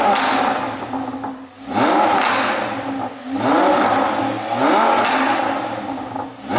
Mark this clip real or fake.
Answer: real